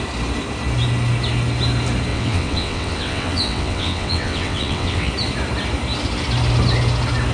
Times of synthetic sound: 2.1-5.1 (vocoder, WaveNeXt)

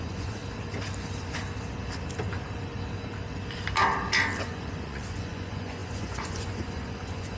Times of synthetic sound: 0.0-0.4 (vocoder, Vocos); 4.4-7.4

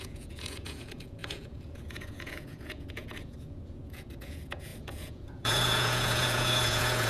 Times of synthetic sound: 0.0-7.1 (vocoder, Vocos)

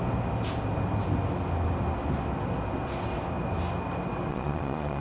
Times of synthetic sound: 4.3-5.0 (vocoder, Vocos)

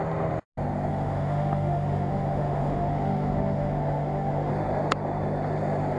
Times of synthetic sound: 0.9-4.5 (autoencoder, DAC-VAE)

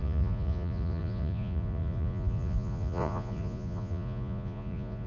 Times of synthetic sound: 0.0-5.1 (vocoder, Vocos)

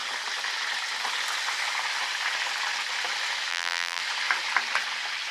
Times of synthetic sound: 3.5-4.0 (vocoder, BigVGAN v2)